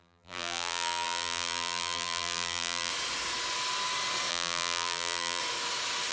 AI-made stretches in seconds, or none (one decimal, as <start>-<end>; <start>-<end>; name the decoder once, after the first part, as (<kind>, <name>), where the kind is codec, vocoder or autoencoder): 0.0-2.9 (vocoder, BigVGAN v2); 4.3-5.4